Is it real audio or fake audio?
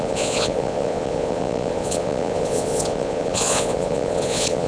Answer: fake